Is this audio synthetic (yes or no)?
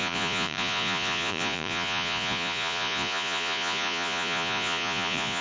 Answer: yes